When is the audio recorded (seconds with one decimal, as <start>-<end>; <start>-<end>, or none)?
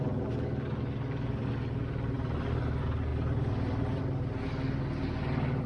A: 0.0-5.7